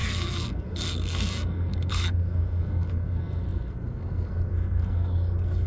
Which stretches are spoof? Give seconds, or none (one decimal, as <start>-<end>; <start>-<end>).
0.0-5.7